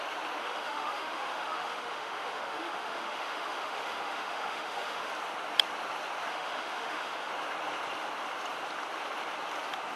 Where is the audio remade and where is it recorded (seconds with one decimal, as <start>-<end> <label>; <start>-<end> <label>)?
0.0-0.4 recorded; 0.4-5.1 remade; 5.1-6.3 recorded; 6.3-7.3 remade; 7.3-10.0 recorded